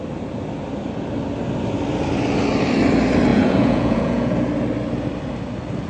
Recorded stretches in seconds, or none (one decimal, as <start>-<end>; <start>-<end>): 0.0-3.3; 4.5-5.9